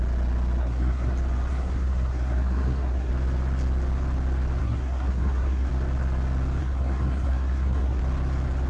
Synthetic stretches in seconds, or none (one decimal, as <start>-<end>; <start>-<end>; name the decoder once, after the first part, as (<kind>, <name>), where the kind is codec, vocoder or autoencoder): 0.6-1.1 (codec, SNAC); 1.5-3.1; 4.6-5.7; 6.6-8.0